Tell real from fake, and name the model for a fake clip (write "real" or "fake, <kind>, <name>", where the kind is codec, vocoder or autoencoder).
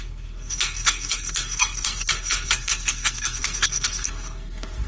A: fake, codec, SNAC